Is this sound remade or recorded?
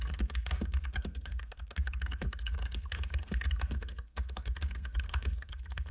remade